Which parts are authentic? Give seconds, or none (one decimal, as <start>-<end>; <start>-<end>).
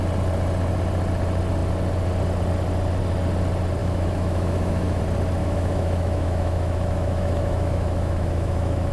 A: 0.0-3.8; 5.0-5.4